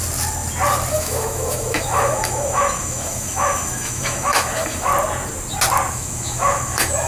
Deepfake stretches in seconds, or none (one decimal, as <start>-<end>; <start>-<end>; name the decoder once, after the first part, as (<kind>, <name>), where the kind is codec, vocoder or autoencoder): 0.9-4.9 (autoencoder, DAC-VAE); 5.9-7.1